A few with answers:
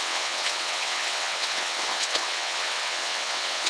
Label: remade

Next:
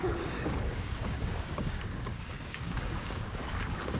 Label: remade